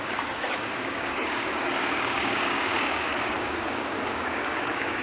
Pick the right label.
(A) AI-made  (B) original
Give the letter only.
A